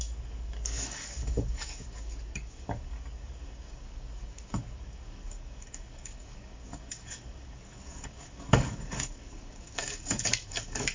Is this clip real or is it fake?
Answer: fake